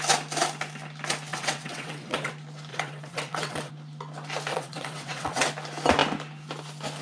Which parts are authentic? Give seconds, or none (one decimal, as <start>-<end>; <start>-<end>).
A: 0.0-1.3; 2.3-2.7; 3.7-4.5; 5.5-7.0